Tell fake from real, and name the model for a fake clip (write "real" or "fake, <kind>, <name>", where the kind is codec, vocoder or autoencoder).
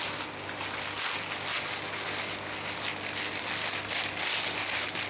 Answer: real